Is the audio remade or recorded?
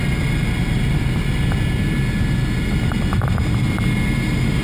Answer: recorded